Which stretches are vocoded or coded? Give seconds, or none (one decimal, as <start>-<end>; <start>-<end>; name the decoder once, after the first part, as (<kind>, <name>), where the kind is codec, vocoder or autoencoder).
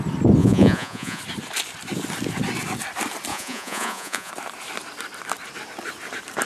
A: 0.4-1.2 (vocoder, Vocos); 3.3-4.3